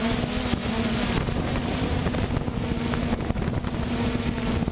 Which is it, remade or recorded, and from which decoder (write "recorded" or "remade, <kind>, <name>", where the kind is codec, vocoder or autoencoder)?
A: recorded